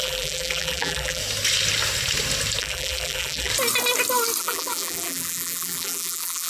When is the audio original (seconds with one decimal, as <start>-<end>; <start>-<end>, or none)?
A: 1.2-2.6; 3.5-4.4